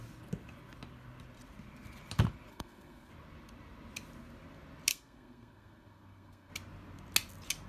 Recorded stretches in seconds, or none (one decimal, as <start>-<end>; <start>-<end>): 0.0-2.5; 3.1-4.9; 6.5-7.7